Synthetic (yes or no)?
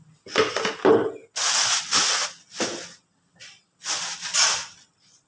no